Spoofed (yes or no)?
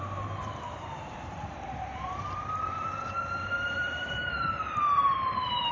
yes